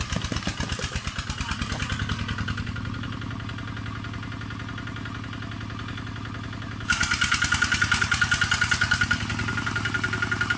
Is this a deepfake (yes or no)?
no